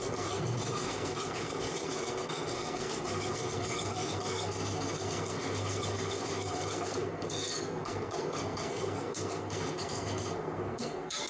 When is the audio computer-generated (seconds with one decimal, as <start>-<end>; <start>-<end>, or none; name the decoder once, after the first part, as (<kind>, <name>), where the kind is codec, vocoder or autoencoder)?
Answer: 0.0-11.3 (codec, SNAC)